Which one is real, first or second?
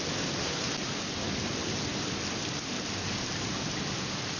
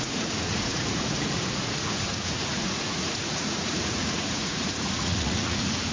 first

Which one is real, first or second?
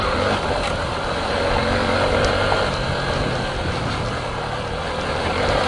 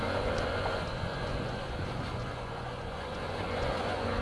first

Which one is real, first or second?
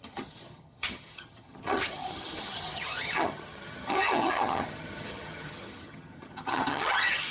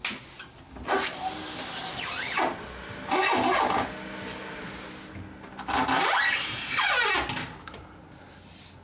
second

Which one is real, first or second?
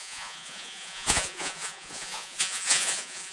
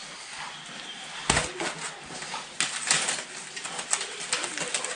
second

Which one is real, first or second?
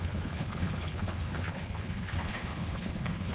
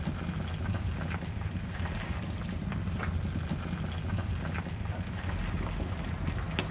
second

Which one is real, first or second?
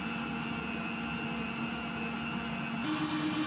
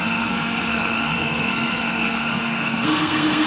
first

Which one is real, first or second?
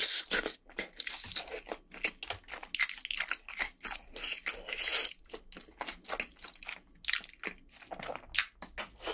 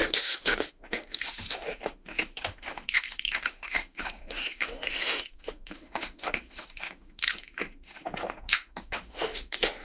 first